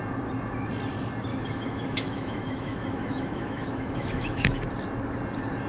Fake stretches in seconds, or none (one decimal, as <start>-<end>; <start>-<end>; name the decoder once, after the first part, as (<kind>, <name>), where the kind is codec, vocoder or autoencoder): 1.3-4.6 (autoencoder, DAC-VAE)